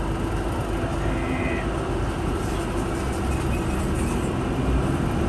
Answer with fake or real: real